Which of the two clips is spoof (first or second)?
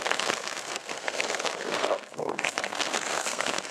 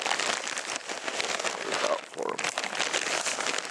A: first